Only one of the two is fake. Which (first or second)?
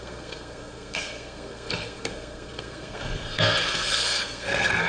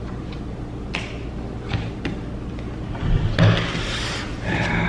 first